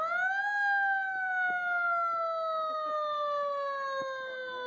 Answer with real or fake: real